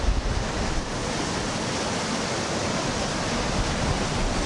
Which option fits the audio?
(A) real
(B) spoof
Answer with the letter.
A